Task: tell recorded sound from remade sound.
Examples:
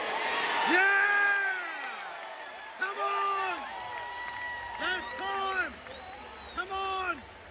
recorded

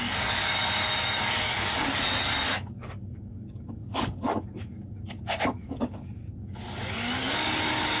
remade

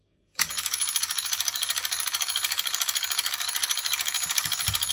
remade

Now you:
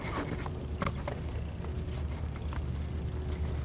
recorded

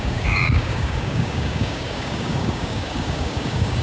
remade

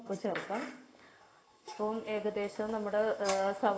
remade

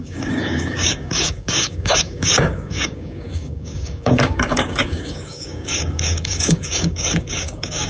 remade